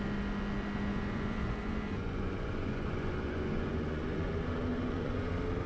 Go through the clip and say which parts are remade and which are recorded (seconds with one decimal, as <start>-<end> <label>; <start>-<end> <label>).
0.0-0.9 recorded; 0.9-4.3 remade; 4.3-4.7 recorded; 4.7-5.3 remade; 5.3-5.7 recorded